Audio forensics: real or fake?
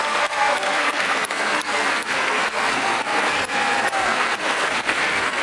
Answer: fake